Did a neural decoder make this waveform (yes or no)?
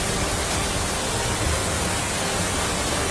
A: no